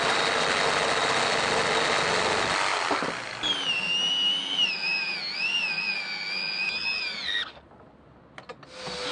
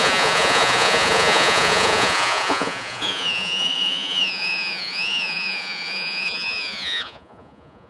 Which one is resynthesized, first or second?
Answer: second